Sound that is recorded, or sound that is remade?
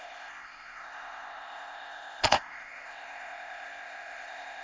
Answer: remade